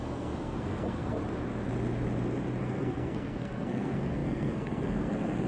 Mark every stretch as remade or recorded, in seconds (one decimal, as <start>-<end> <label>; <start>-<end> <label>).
0.0-1.2 remade; 1.2-2.6 recorded; 2.6-5.5 remade